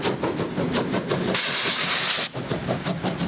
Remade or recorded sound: recorded